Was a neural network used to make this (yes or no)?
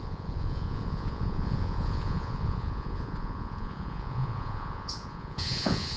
yes